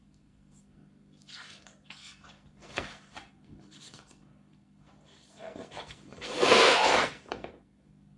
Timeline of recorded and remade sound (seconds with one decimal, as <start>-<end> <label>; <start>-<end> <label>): 0.0-8.2 remade